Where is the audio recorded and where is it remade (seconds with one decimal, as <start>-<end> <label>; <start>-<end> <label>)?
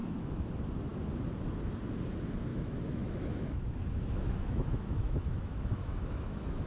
0.0-0.5 remade; 0.5-2.5 recorded; 2.5-6.7 remade